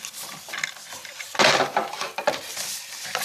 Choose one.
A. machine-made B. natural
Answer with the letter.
B